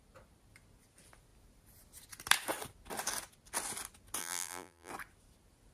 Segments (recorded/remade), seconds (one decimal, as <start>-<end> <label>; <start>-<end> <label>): 0.0-4.2 recorded; 4.2-4.9 remade; 4.9-5.7 recorded